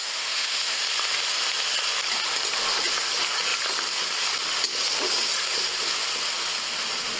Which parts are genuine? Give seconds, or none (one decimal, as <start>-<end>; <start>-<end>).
0.8-7.2